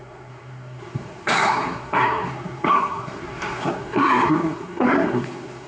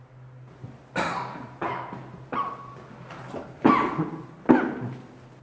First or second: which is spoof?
first